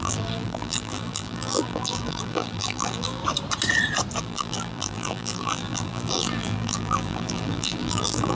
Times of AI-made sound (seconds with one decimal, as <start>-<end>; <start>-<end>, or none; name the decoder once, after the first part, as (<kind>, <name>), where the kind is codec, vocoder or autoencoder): 0.0-3.2 (vocoder, BigVGAN v2); 4.2-8.4